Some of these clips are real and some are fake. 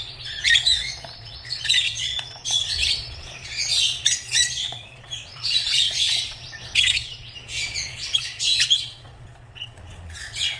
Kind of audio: fake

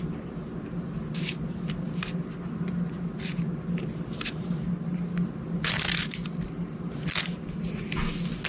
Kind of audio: real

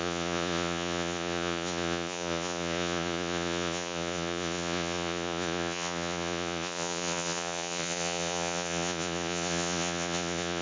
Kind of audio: fake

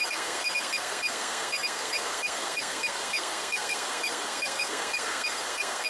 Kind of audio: fake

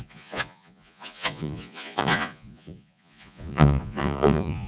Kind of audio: fake